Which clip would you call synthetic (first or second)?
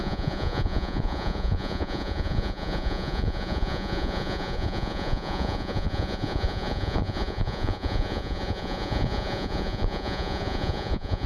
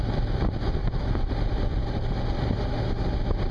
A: first